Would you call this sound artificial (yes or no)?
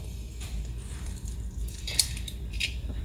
yes